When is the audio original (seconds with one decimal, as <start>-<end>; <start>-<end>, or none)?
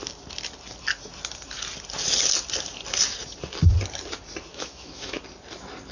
0.0-4.5; 5.2-5.9